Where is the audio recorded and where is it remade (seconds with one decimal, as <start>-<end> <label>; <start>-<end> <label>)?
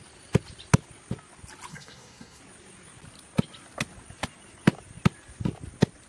0.0-1.7 recorded; 1.7-2.4 remade; 2.4-6.1 recorded